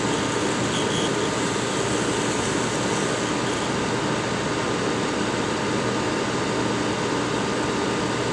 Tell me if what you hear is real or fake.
real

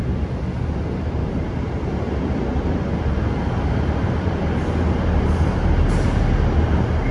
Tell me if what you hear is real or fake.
real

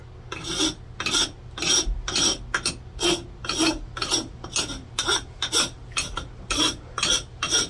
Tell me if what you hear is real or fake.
real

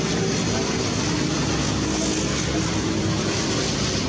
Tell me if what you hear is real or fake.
real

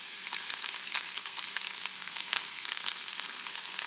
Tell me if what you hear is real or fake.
fake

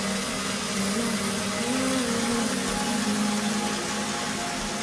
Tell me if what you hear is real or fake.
real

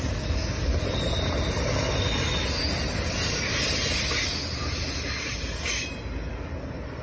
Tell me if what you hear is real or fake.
real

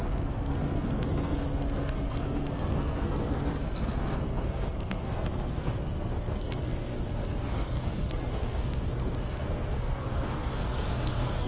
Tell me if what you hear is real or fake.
fake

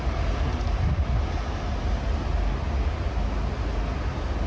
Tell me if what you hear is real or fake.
real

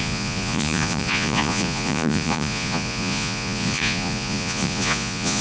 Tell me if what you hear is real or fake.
fake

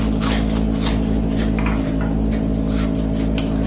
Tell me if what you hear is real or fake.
real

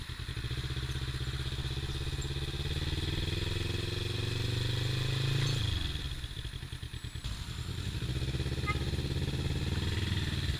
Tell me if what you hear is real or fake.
real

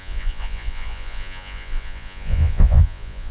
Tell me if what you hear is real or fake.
fake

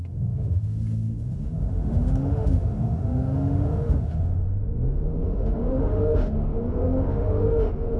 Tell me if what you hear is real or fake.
fake